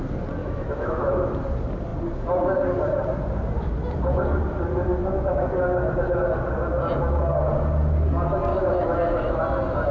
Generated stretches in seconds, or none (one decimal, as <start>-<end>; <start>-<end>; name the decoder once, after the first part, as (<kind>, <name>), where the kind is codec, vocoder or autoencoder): 0.4-1.3 (autoencoder, DAC-VAE); 8.5-9.4